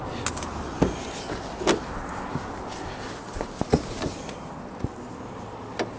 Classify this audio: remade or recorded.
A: recorded